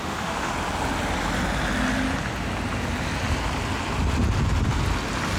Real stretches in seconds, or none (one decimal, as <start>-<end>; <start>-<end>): 0.5-5.4